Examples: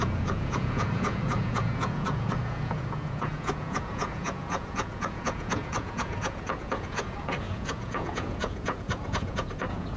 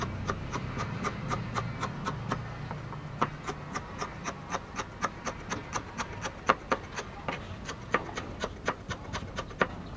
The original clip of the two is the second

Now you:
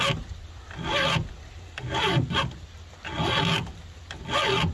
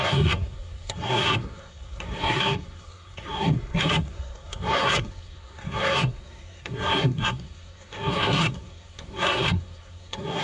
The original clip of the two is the first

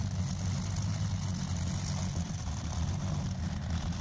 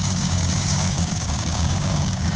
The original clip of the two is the first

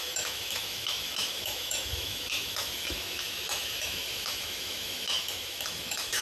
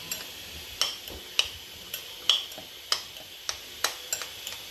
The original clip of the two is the second